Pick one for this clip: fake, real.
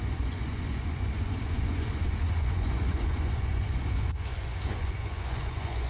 fake